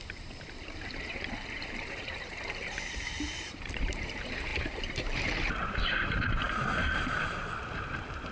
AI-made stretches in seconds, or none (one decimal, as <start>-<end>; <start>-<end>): 0.0-8.3

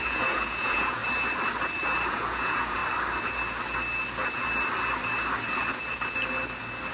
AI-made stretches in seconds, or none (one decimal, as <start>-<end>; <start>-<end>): 0.0-1.0; 2.1-2.8

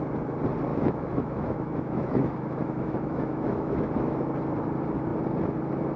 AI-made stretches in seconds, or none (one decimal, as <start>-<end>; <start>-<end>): 0.7-4.3

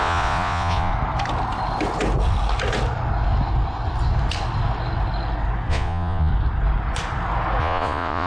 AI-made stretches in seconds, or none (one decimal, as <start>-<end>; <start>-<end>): 0.0-0.9; 5.7-6.3; 7.6-8.3

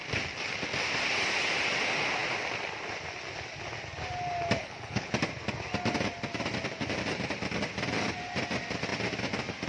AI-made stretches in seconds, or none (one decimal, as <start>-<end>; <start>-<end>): 4.6-5.1

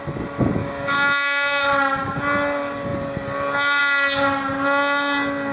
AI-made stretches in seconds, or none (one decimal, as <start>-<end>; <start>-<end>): 0.6-2.2